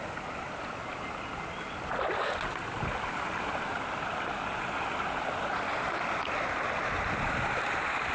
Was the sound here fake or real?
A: real